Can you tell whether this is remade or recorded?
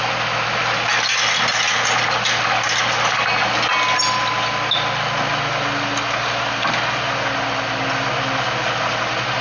recorded